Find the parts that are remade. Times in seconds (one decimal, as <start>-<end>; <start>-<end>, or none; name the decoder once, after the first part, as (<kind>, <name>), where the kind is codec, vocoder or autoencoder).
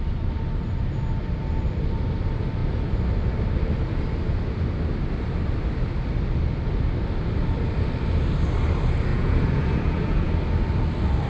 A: 9.1-10.3 (vocoder, Vocos)